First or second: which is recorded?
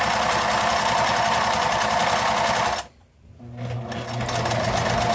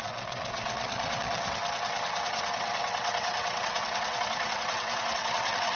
first